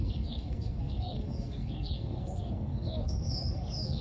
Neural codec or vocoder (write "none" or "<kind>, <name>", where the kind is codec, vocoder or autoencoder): codec, SNAC